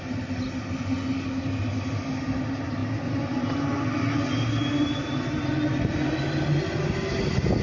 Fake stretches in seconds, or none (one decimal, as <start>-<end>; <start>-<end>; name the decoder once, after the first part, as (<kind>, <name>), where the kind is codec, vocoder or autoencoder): none